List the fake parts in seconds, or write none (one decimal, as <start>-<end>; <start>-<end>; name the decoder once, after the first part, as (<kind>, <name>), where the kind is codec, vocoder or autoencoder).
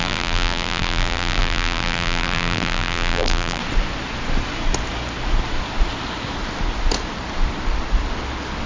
0.0-3.6 (vocoder, BigVGAN v2)